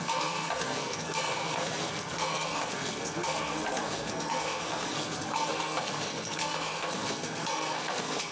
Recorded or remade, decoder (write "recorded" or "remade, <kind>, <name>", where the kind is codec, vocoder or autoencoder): remade, codec, SNAC